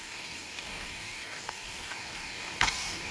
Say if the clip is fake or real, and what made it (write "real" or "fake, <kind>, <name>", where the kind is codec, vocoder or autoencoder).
fake, codec, DAC